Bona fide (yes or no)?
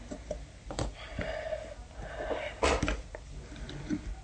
yes